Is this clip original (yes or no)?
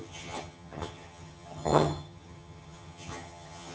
no